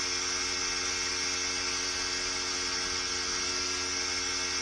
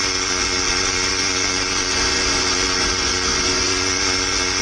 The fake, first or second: second